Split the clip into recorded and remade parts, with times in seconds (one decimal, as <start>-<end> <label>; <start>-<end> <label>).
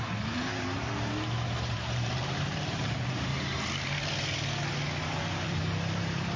0.0-0.5 remade; 0.5-1.5 recorded; 1.5-3.3 remade; 3.3-5.0 recorded; 5.0-6.4 remade